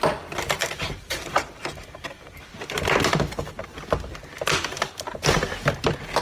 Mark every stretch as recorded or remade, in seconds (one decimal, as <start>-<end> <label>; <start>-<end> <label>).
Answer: 0.0-0.6 recorded; 0.6-2.5 remade; 2.5-6.2 recorded